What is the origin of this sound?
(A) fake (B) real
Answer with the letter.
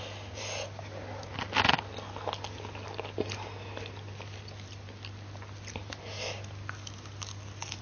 B